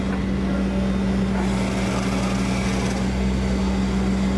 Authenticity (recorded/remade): recorded